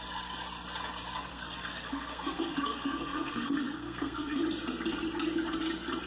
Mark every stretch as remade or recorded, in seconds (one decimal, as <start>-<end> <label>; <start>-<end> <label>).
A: 0.0-1.3 recorded; 1.3-4.4 remade; 4.4-6.1 recorded